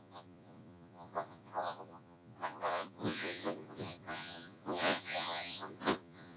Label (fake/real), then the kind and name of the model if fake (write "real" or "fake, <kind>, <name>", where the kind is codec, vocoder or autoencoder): fake, vocoder, Vocos